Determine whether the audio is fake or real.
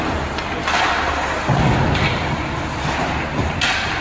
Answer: real